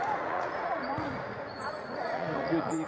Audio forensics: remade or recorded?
remade